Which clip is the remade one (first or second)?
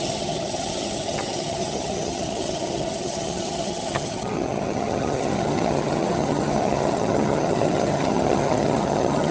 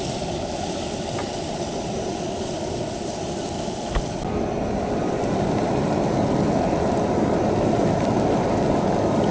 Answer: first